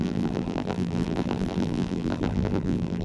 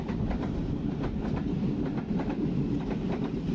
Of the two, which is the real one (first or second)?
second